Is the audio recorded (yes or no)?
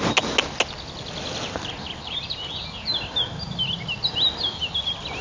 yes